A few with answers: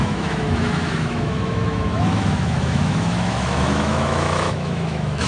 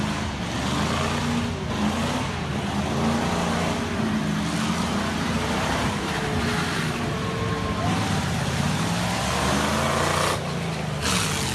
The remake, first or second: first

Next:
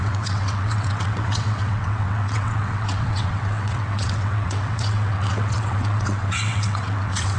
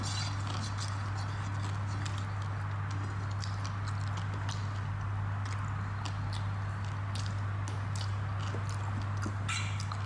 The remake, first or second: first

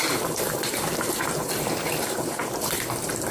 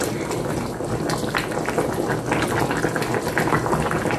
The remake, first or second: first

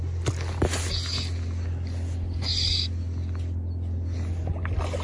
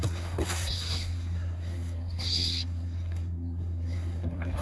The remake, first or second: second